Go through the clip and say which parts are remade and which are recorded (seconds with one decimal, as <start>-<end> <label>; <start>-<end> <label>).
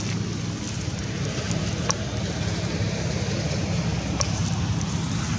0.0-1.0 recorded; 1.0-1.7 remade; 1.7-5.4 recorded